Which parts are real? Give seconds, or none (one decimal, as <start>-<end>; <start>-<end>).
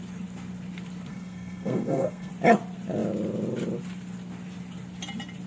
0.0-1.1; 2.3-5.5